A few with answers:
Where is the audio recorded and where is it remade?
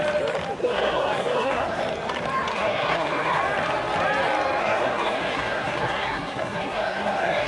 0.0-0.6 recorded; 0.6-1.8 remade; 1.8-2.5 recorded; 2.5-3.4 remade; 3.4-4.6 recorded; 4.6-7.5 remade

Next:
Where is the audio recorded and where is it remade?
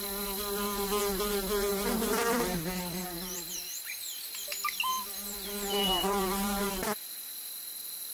0.0-1.7 recorded; 1.7-2.6 remade; 2.6-3.0 recorded; 3.0-4.0 remade; 4.0-4.9 recorded; 4.9-6.7 remade; 6.7-8.1 recorded